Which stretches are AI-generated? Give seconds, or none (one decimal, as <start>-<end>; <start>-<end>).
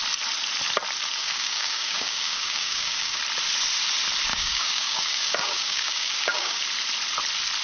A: 1.2-3.2; 4.3-6.6